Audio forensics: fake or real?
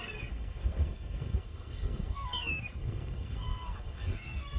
fake